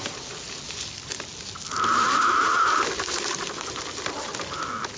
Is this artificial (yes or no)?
no